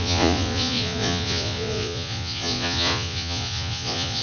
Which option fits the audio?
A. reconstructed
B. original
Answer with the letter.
A